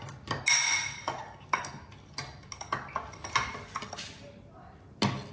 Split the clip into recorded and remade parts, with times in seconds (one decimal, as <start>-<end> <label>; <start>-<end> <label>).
0.0-5.3 recorded